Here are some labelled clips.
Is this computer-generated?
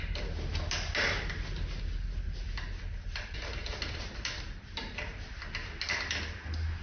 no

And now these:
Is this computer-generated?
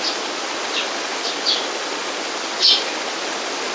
no